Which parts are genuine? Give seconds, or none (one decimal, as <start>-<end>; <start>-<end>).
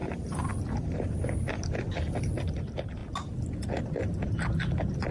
2.1-5.1